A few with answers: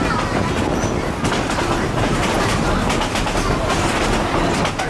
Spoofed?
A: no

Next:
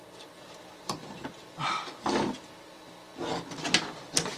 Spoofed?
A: yes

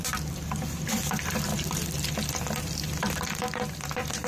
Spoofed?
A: yes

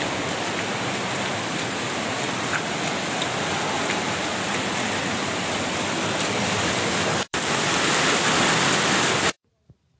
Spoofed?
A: yes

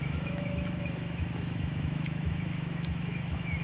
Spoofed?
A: yes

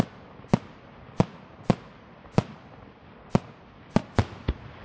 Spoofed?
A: no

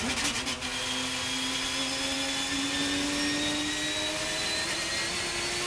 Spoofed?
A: no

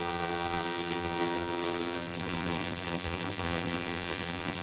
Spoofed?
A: yes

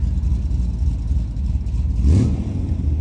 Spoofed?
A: no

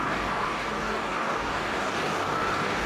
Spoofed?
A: yes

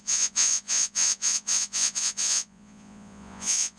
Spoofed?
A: yes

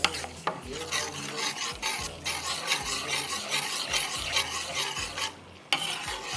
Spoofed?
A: no